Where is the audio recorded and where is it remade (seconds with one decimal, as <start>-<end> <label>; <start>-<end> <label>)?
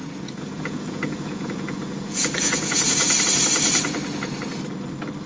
0.0-3.2 remade; 3.2-5.3 recorded